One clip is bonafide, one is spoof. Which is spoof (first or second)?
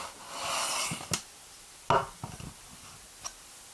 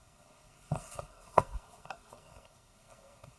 second